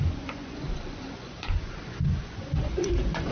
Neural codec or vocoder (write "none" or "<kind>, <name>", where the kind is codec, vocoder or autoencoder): vocoder, Vocos